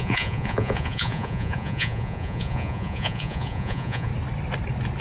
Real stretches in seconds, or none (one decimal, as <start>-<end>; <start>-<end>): 4.1-5.0